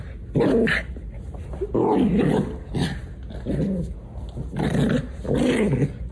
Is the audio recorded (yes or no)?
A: yes